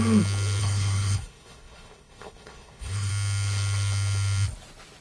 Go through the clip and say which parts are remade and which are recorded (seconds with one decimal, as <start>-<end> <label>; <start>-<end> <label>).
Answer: 0.0-0.6 recorded; 0.6-3.1 remade; 3.1-5.0 recorded